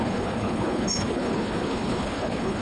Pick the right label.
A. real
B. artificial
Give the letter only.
B